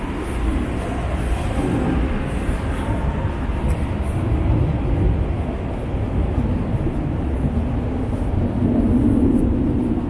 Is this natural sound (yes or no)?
yes